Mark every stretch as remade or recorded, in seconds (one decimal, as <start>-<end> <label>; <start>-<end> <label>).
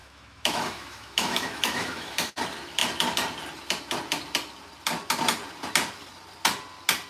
0.0-2.4 remade; 2.4-7.1 recorded